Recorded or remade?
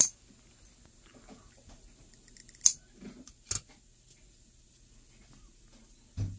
recorded